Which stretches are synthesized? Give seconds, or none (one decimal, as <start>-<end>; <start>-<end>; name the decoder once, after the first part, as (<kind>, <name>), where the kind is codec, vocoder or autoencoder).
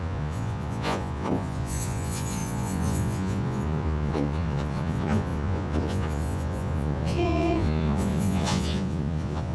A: 0.0-9.5 (vocoder, Vocos)